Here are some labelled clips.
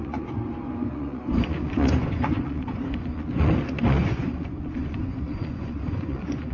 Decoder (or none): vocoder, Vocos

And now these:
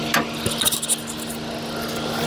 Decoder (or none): none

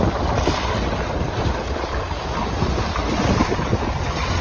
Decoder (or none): none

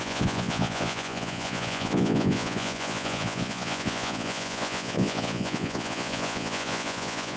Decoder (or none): vocoder, Vocos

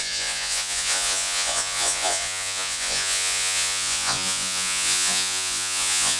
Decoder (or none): vocoder, Vocos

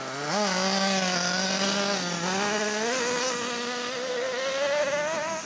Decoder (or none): none